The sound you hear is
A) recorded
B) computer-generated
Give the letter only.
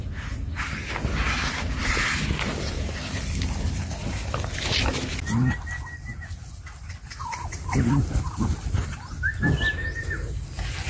A